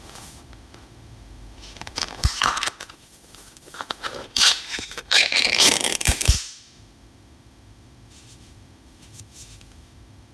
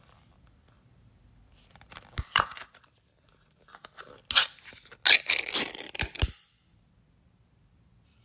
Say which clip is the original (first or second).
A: second